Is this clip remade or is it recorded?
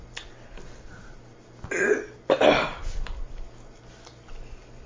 recorded